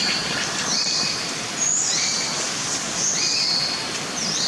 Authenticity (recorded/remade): recorded